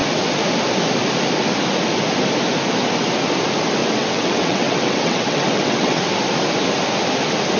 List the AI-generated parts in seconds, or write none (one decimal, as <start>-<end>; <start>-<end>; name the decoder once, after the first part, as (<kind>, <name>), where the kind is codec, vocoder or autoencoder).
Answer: 3.8-6.0 (vocoder, WaveNeXt)